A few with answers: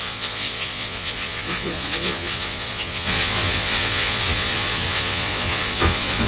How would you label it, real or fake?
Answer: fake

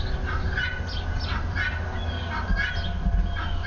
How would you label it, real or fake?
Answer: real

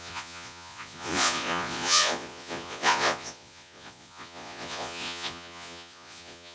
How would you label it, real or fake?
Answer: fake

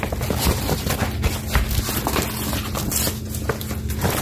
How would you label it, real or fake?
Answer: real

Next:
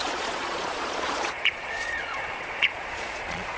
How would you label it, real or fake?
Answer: fake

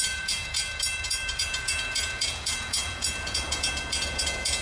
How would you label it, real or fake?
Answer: fake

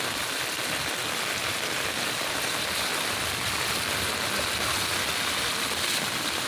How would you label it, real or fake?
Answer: real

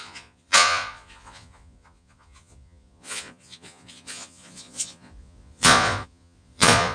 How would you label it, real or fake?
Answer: fake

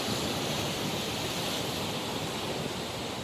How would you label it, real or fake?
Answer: real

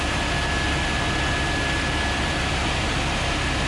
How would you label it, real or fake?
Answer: real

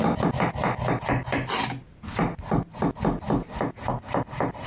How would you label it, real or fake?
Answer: real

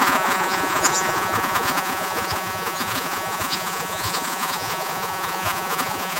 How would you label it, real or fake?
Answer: fake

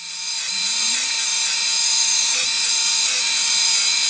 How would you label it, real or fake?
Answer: fake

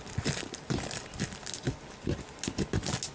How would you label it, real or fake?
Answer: real